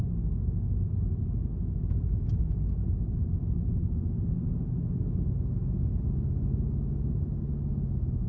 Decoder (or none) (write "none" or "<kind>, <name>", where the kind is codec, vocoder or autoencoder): none